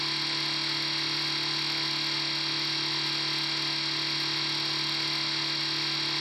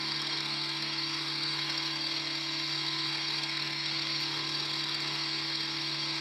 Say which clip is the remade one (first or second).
second